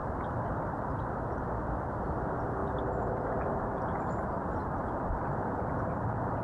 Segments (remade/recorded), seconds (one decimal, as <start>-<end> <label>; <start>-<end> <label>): 0.0-0.9 remade; 0.9-2.6 recorded; 2.6-6.4 remade